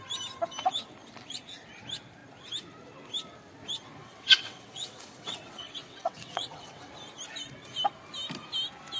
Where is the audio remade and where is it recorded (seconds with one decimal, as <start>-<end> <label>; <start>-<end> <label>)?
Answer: 0.0-4.0 recorded; 4.0-6.9 remade; 6.9-9.0 recorded

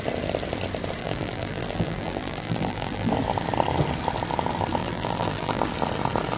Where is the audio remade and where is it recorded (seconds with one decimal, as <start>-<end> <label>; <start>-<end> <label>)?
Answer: 0.0-1.0 recorded; 1.0-3.1 remade; 3.1-4.8 recorded; 4.8-5.6 remade; 5.6-6.4 recorded

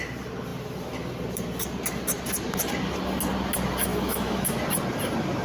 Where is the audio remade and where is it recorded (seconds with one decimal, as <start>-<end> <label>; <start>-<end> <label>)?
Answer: 0.0-3.9 recorded; 3.9-4.6 remade; 4.6-5.4 recorded

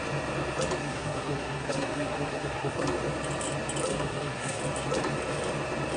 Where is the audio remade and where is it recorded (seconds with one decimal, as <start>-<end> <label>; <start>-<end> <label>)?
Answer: 0.0-0.8 recorded; 0.8-2.8 remade; 2.8-3.9 recorded; 3.9-4.6 remade; 4.6-6.0 recorded

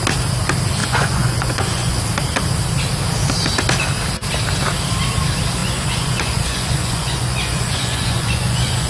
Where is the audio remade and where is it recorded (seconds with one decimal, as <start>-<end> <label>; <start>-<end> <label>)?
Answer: 0.0-0.8 recorded; 0.8-2.0 remade; 2.0-5.6 recorded; 5.6-8.9 remade

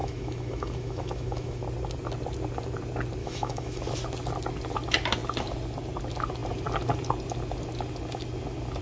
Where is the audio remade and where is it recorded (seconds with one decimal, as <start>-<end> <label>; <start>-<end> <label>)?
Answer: 0.0-1.6 remade; 1.6-3.2 recorded; 3.2-3.8 remade; 3.8-8.8 recorded